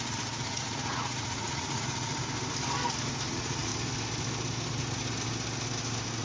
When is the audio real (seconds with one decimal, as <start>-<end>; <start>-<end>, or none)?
2.1-3.3; 3.7-6.2

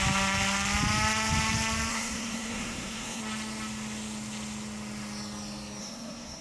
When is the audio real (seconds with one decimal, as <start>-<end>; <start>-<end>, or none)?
0.0-1.9; 3.2-5.8